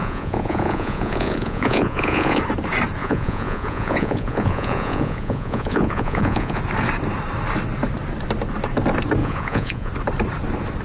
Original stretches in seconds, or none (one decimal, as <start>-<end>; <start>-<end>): 2.4-3.0; 6.6-9.2; 9.9-10.8